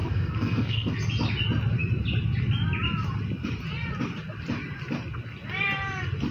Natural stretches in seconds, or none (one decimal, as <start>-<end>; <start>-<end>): 0.9-6.3